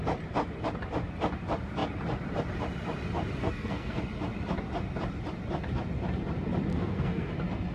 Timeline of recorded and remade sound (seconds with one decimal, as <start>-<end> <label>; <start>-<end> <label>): 0.0-3.4 recorded; 3.4-4.0 remade; 4.0-6.7 recorded; 6.7-7.3 remade; 7.3-7.7 recorded